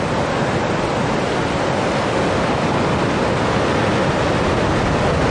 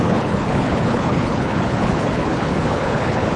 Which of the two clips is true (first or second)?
first